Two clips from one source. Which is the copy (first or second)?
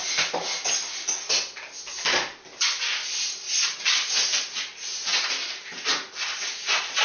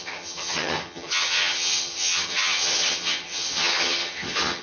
second